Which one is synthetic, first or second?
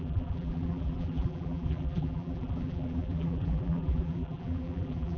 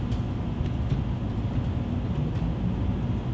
first